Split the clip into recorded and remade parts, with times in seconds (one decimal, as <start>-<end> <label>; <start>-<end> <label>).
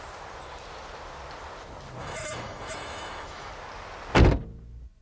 0.0-2.0 recorded; 2.0-3.5 remade; 3.5-5.0 recorded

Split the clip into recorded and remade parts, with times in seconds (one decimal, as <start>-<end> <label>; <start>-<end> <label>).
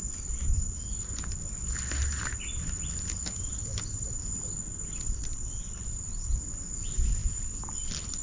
0.0-3.7 recorded; 3.7-5.3 remade; 5.3-8.2 recorded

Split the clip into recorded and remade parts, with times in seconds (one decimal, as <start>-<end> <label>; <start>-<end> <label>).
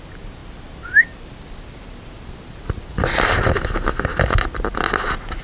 0.0-5.4 recorded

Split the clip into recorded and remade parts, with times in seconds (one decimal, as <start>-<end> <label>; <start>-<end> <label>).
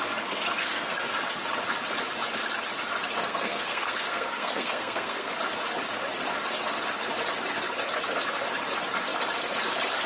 0.0-0.6 recorded; 0.6-1.1 remade; 1.1-3.2 recorded; 3.2-5.3 remade; 5.3-10.1 recorded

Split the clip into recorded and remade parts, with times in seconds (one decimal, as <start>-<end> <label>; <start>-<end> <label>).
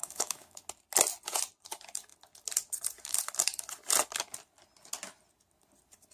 0.0-0.6 remade; 0.6-6.1 recorded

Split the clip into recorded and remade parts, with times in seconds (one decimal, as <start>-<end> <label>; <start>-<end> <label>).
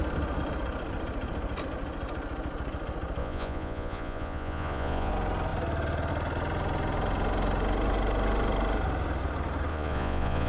0.0-3.2 recorded; 3.2-5.1 remade; 5.1-9.7 recorded; 9.7-10.5 remade